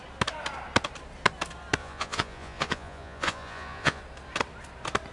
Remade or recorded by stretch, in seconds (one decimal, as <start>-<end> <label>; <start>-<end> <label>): 0.0-1.8 recorded; 1.8-4.0 remade; 4.0-5.1 recorded